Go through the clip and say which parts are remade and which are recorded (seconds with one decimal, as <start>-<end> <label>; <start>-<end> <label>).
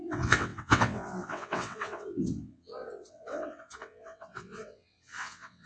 0.0-5.7 remade